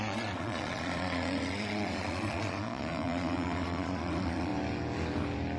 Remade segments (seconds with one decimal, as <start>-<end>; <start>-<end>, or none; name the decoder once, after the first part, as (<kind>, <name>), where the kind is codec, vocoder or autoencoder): 0.0-4.5 (vocoder, Vocos)